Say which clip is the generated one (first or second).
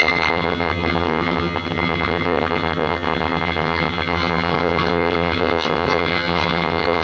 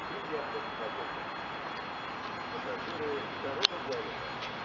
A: first